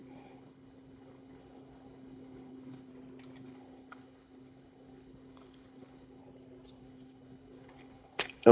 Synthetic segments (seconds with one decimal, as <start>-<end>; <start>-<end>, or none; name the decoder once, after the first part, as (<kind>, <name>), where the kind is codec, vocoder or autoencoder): 0.0-2.9 (codec, HILCodec); 3.4-6.2; 6.8-8.5